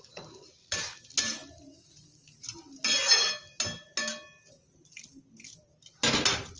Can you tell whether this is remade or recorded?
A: recorded